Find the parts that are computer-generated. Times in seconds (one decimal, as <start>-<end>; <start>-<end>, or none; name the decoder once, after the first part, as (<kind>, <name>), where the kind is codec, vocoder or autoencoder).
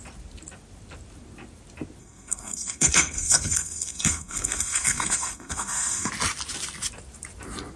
2.0-6.1 (codec, SNAC)